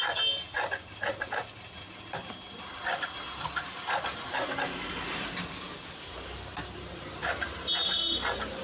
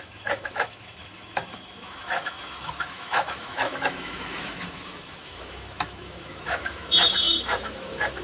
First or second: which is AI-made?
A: second